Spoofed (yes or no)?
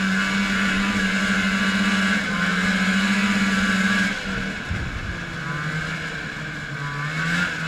no